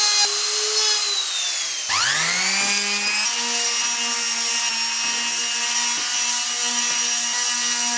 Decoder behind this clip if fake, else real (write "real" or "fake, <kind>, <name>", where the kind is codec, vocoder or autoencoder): real